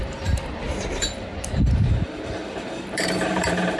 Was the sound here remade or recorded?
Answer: remade